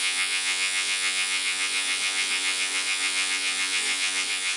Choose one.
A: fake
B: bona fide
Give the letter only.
A